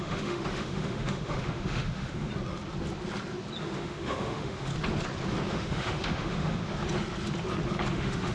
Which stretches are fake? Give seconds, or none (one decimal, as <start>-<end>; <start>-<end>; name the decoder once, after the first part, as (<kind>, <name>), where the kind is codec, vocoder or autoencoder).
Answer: 0.0-2.3 (autoencoder, DAC-VAE); 3.6-4.7; 5.5-6.6; 7.9-8.3